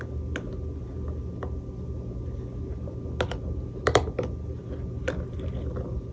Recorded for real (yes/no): yes